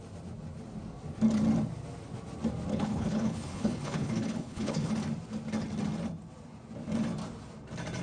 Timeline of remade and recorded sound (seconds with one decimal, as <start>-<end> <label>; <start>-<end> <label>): 0.0-2.7 recorded; 2.7-4.9 remade; 4.9-8.0 recorded